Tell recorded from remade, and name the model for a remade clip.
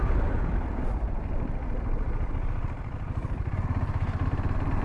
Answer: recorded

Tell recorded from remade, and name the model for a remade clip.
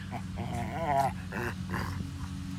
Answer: recorded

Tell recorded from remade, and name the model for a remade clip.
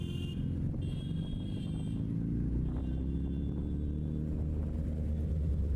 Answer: recorded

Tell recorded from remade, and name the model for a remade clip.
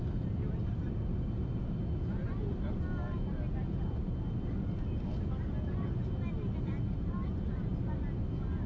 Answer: recorded